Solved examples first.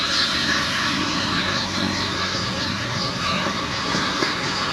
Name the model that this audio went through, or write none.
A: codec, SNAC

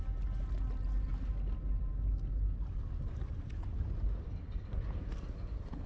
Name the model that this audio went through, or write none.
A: none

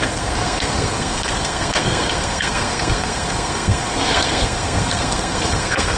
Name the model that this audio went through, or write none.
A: codec, SNAC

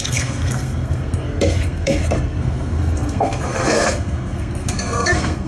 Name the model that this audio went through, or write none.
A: codec, SNAC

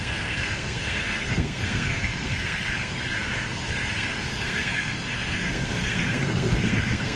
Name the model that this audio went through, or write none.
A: codec, SNAC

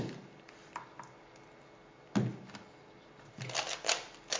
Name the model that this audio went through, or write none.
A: none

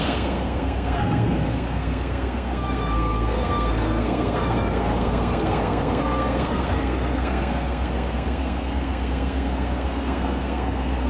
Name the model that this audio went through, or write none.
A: codec, SNAC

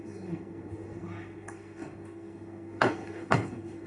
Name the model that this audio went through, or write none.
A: codec, SNAC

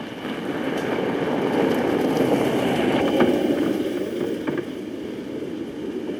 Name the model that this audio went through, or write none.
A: none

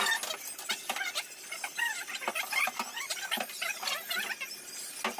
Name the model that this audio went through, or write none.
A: none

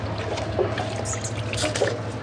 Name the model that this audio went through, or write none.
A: none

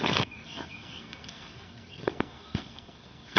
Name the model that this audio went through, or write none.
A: codec, SNAC